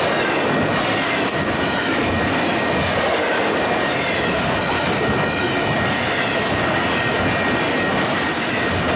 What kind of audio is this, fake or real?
fake